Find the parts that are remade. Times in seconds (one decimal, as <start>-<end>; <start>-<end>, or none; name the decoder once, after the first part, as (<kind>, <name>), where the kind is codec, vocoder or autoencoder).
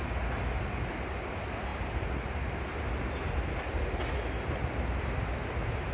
none